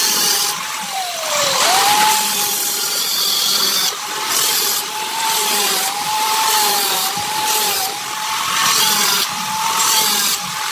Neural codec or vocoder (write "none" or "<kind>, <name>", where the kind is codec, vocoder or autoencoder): vocoder, BigVGAN v2